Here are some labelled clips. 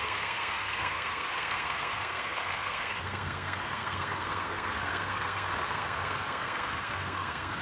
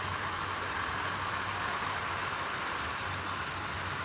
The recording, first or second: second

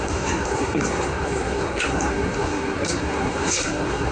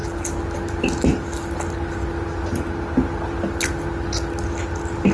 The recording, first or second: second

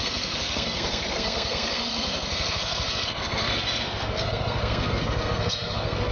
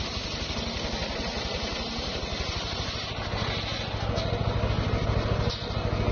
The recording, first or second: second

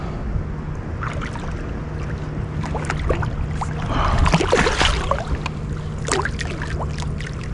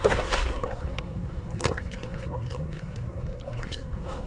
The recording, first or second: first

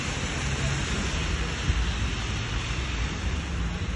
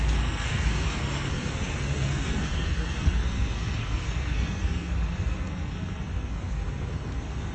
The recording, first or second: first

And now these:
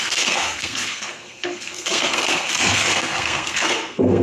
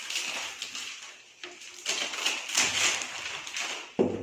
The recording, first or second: second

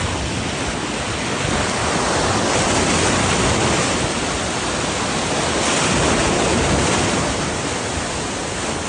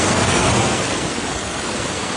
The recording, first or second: first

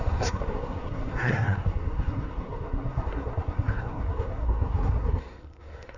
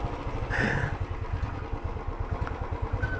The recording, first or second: second